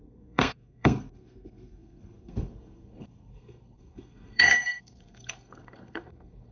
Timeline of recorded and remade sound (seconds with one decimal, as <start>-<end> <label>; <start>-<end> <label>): 0.0-6.5 remade